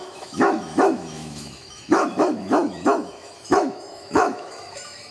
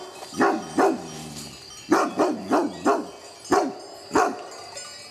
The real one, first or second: second